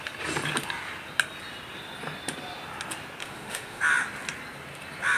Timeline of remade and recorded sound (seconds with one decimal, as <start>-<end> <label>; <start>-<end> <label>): 0.0-3.2 recorded; 3.2-3.8 remade; 3.8-5.2 recorded